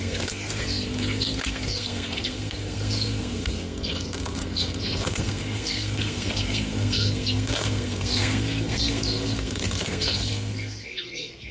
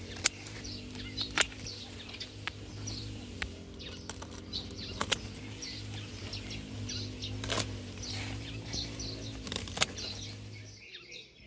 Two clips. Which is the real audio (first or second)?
second